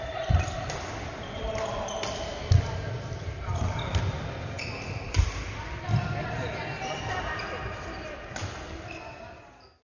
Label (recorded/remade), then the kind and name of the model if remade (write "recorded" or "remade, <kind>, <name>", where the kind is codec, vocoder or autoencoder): recorded